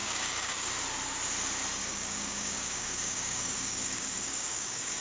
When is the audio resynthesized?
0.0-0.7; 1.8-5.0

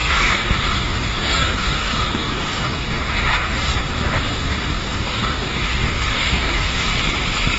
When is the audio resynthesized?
0.0-3.7; 4.4-6.9

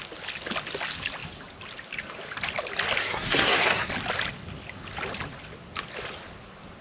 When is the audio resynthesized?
3.0-3.9

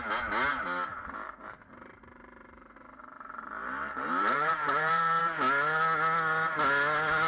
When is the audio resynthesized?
0.9-5.2

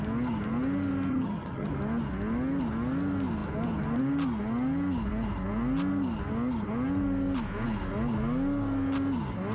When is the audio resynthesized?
1.1-1.7

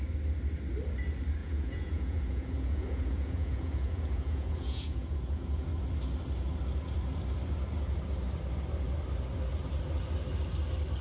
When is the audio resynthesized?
1.4-5.8